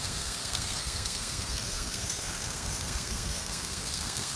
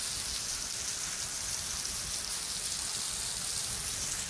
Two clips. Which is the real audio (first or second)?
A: second